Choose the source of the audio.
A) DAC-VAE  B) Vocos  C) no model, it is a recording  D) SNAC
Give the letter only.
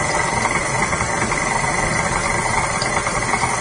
C